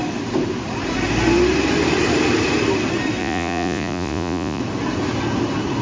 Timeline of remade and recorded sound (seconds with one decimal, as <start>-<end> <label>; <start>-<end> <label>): 0.0-3.2 recorded; 3.2-4.6 remade; 4.6-5.8 recorded